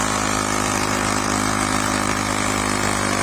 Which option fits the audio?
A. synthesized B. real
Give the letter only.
B